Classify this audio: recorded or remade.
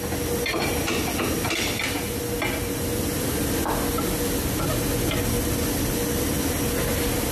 recorded